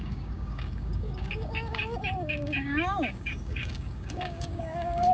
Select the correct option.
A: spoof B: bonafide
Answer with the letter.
A